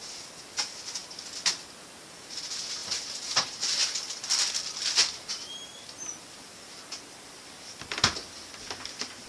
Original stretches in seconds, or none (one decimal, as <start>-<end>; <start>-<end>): 0.0-9.3